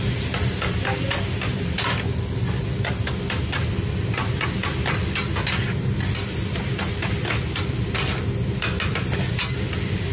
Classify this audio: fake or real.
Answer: real